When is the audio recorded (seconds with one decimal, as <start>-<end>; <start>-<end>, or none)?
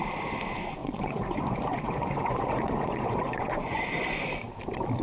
0.0-0.8; 3.8-5.0